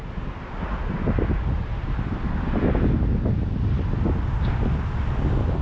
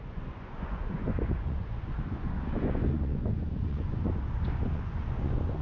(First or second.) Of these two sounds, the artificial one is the second